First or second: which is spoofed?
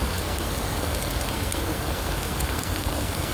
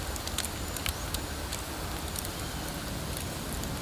first